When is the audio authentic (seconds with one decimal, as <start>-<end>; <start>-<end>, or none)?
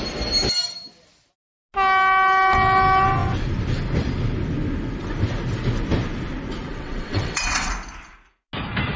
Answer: 0.0-6.7; 7.7-9.0